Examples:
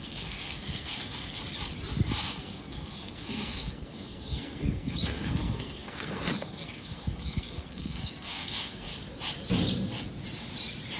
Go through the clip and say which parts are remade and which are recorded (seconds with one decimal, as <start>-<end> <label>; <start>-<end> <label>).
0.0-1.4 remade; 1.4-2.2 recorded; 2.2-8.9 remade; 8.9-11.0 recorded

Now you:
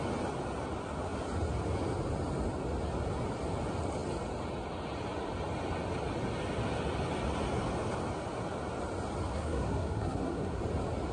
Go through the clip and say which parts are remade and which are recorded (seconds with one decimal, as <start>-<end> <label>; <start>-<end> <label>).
0.0-9.3 recorded; 9.3-10.6 remade; 10.6-11.1 recorded

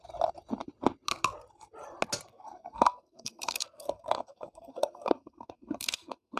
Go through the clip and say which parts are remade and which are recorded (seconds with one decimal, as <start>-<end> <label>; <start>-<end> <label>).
0.0-2.3 recorded; 2.3-6.4 remade

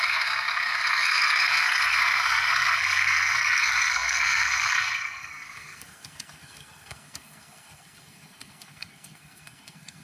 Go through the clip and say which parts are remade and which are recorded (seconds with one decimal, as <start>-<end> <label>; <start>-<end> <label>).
0.0-10.0 remade